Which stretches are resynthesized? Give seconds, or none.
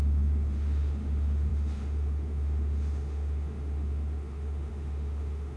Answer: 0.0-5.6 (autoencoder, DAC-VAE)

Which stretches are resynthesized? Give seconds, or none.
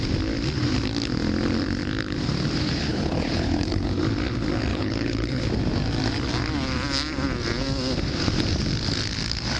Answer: 2.9-4.0 (codec, HILCodec); 4.7-5.4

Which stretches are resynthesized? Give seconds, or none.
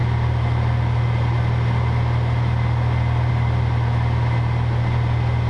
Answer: none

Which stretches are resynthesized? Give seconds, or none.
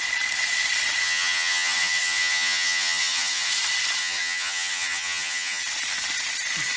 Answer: 1.0-3.5 (vocoder, HiFi-GAN); 4.0-5.6